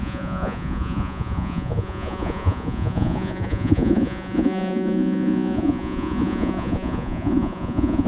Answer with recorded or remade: remade